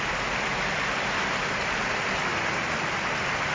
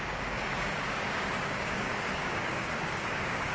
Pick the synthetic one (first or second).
second